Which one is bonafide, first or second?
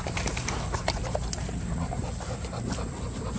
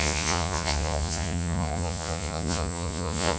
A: first